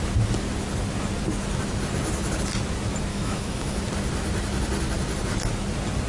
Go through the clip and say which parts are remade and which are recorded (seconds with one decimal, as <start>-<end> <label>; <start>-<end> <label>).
0.0-3.1 recorded; 3.1-3.8 remade; 3.8-6.1 recorded